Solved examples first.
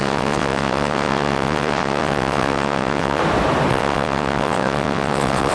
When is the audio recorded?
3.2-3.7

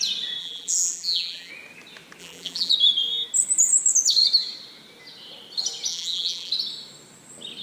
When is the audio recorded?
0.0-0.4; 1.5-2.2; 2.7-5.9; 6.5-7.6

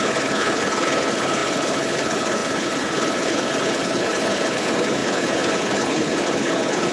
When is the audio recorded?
none

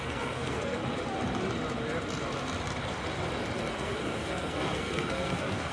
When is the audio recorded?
0.8-3.7

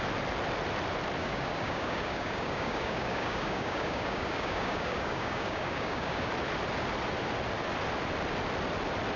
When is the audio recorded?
0.0-1.2; 6.3-9.2